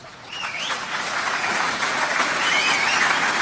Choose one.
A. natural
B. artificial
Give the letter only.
B